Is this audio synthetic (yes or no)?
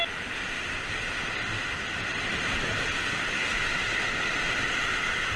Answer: no